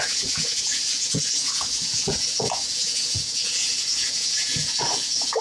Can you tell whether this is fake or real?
fake